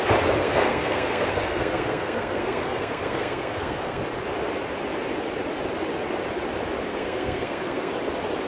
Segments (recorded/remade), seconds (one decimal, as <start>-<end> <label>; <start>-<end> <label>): 0.0-0.4 recorded; 0.4-4.0 remade; 4.0-6.9 recorded; 6.9-7.9 remade; 7.9-8.5 recorded